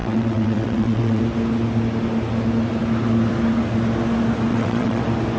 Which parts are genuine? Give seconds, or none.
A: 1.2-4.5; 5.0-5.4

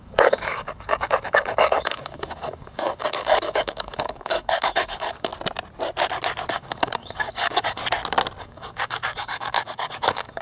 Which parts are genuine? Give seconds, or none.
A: 5.3-6.5; 7.8-8.4

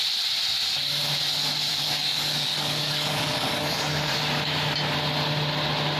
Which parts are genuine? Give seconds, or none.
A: 0.0-1.7; 4.1-6.0

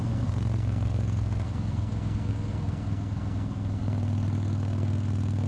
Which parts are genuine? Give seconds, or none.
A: none

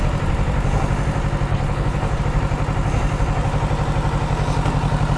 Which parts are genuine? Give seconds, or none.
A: 0.0-1.5; 2.2-5.2

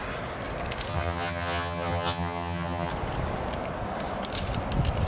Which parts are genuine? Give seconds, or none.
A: 0.0-0.9; 2.9-5.1